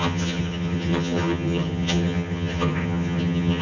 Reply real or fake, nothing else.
fake